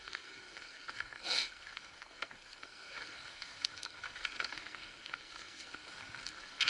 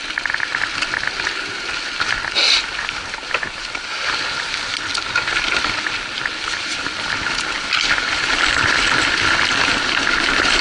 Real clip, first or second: second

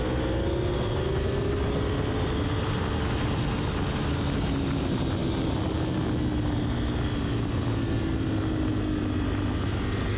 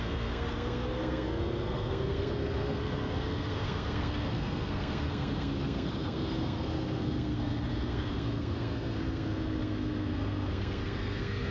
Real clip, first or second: first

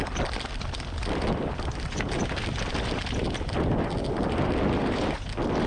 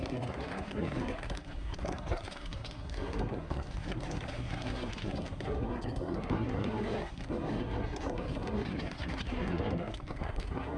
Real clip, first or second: first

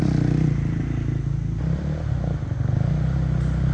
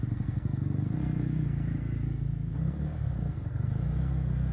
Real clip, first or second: first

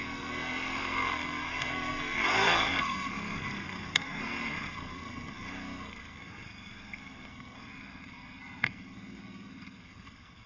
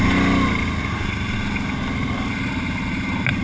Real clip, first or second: second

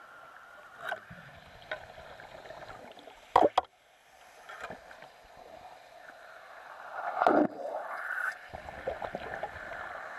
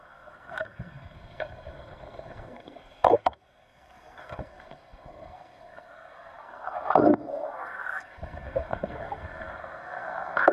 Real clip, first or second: first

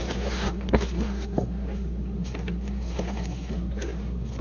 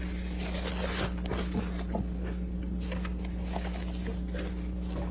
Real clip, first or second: second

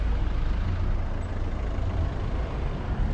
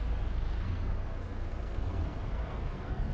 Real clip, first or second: first